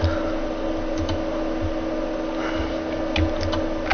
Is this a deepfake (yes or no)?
no